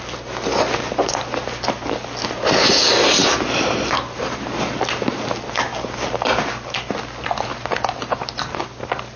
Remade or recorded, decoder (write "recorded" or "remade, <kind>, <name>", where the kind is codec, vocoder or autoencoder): recorded